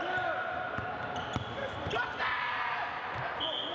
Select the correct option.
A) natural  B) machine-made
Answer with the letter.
A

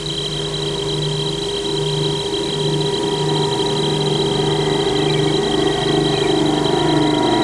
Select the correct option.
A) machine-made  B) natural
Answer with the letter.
B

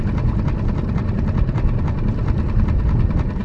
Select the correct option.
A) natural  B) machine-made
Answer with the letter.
A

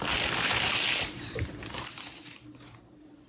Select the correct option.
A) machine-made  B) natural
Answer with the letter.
A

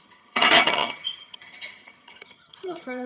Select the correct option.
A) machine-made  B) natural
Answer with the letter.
A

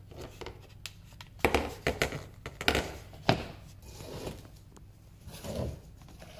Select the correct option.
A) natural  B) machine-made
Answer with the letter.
A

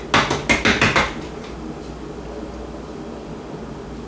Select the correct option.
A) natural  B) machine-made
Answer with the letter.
A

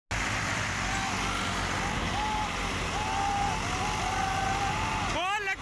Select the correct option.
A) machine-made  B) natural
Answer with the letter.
B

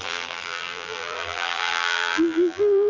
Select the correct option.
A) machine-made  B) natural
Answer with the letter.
A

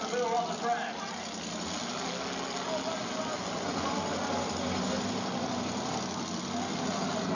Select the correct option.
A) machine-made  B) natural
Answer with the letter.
B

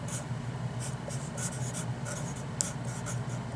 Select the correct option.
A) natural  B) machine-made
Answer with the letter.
A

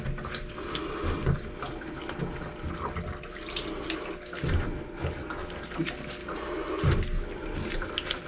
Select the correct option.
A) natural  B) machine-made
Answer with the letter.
A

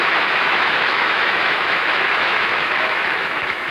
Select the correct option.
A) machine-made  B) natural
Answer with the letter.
A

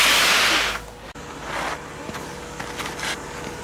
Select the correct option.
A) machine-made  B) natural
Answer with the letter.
B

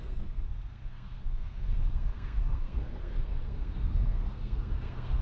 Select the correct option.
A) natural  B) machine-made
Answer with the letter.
B